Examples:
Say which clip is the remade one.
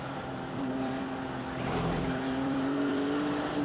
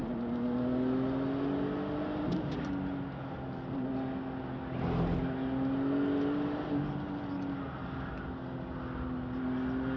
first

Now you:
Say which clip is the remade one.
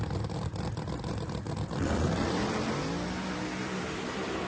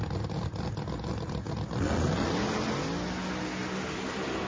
first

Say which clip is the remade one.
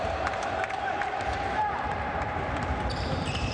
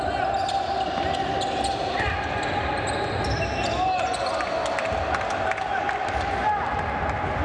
first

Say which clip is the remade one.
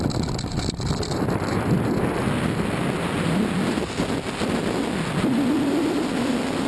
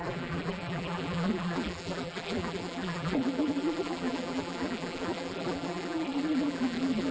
second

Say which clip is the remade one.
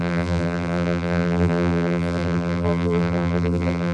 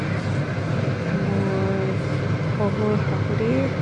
first